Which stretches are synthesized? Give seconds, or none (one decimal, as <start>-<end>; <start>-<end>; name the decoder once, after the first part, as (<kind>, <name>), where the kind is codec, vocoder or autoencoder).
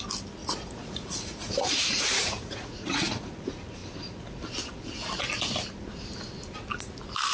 0.4-3.3 (vocoder, Vocos)